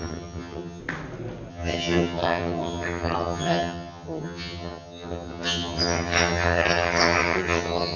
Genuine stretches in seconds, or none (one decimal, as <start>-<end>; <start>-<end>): 0.8-1.5